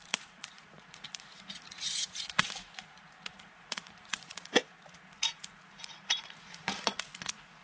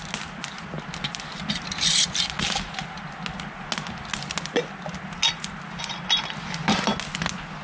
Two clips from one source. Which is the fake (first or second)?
first